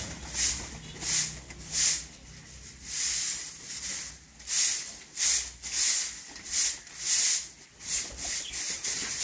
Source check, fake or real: real